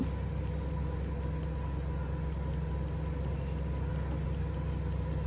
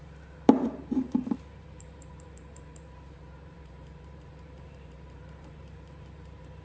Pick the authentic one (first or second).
first